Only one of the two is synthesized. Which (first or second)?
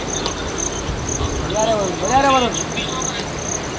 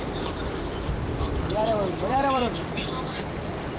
second